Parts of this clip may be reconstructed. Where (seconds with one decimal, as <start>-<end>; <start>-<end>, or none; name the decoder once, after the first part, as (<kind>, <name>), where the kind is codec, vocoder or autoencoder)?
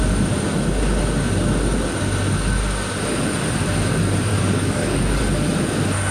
4.3-5.2 (codec, DAC)